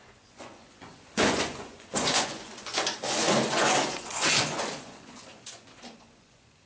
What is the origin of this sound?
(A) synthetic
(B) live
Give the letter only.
A